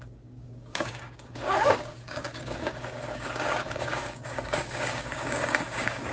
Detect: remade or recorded remade